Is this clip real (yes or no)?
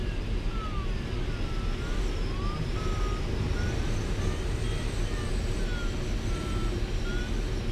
yes